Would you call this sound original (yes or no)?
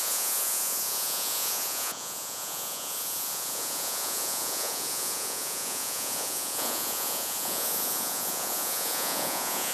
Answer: no